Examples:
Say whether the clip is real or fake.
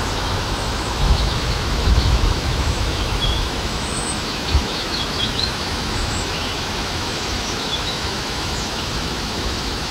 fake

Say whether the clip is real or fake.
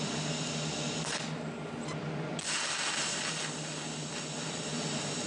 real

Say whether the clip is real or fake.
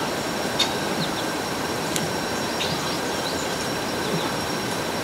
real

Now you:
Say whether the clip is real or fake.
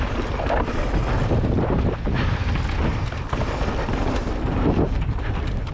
real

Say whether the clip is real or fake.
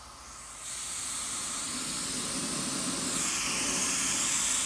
real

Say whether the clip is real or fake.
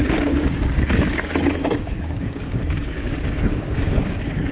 fake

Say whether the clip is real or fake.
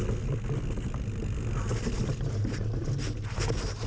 real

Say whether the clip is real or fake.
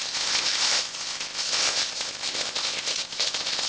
fake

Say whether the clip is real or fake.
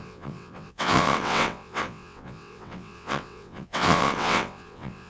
fake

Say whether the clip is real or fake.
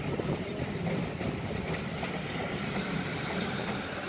fake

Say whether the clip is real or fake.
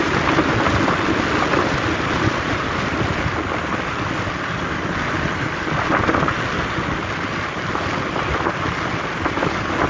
real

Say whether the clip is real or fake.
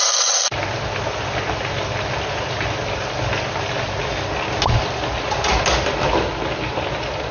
real